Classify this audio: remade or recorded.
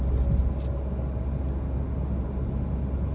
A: recorded